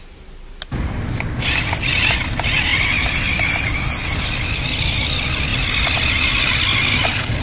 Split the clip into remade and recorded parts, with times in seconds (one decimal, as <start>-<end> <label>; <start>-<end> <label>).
0.0-7.4 recorded